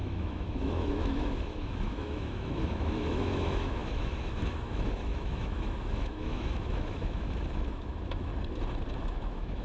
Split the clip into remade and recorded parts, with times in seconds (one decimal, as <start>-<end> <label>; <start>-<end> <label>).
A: 0.0-8.3 remade; 8.3-9.0 recorded; 9.0-9.6 remade